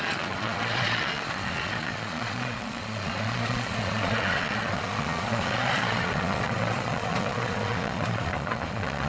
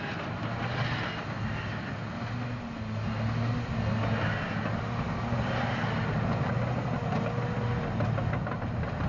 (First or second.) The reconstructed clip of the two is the first